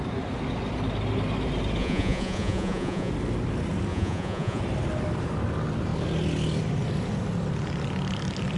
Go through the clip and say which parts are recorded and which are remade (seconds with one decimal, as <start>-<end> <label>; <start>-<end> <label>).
0.0-1.8 recorded; 1.8-3.1 remade; 3.1-3.9 recorded; 3.9-4.6 remade; 4.6-8.6 recorded